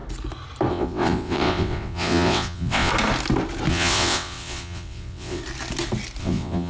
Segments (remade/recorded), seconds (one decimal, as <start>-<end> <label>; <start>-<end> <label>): 0.0-0.7 recorded; 0.7-2.9 remade; 2.9-3.7 recorded; 3.7-5.4 remade; 5.4-6.2 recorded; 6.2-6.7 remade